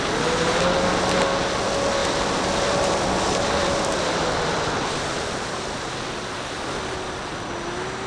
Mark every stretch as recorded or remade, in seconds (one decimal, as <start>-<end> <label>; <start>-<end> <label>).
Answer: 0.0-2.0 recorded; 2.0-6.1 remade; 6.1-8.1 recorded